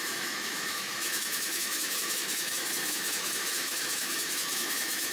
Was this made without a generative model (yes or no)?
no